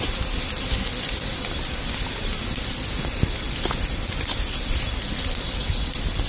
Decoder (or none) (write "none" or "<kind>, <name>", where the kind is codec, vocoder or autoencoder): none